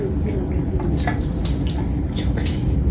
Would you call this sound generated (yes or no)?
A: no